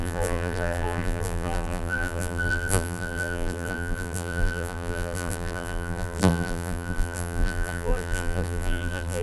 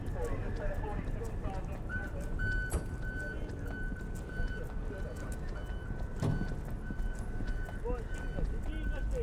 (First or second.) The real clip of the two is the second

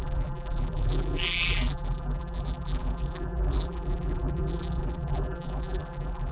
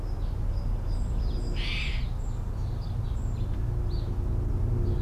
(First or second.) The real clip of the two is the second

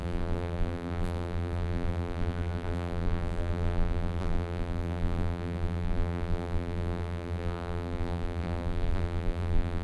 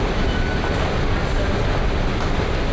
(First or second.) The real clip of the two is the second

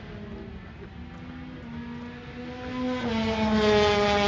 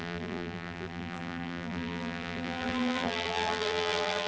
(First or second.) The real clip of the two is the first